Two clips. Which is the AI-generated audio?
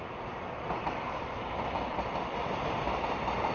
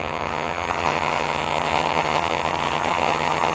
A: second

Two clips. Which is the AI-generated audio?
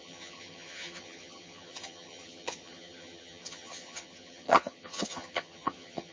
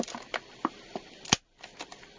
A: first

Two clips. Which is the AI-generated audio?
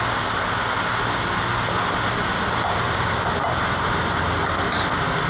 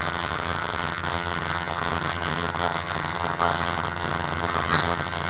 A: second